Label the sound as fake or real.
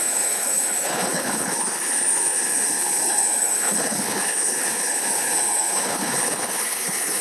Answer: fake